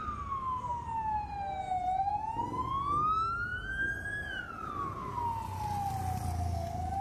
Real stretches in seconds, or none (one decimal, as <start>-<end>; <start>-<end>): 0.0-7.0